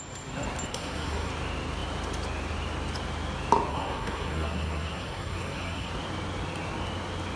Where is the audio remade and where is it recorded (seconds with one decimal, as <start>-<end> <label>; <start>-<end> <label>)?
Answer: 0.0-0.7 recorded; 0.7-1.3 remade; 1.3-3.7 recorded; 3.7-5.9 remade; 5.9-7.4 recorded